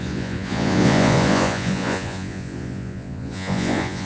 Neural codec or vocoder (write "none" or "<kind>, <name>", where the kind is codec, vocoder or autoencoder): vocoder, Vocos